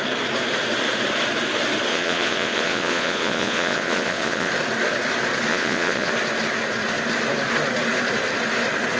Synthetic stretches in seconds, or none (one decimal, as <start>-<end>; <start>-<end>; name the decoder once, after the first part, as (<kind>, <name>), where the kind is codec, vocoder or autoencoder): 1.9-4.5 (vocoder, Vocos); 5.5-6.1